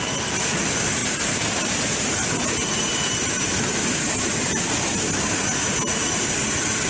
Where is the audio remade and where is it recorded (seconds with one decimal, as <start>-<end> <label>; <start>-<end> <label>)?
0.0-1.0 recorded; 1.0-5.1 remade; 5.1-6.9 recorded